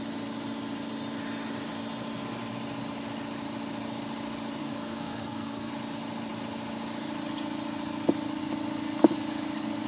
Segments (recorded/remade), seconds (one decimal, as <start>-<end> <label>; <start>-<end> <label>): 0.0-4.6 recorded; 4.6-5.7 remade; 5.7-9.9 recorded